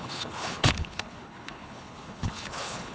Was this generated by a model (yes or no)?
yes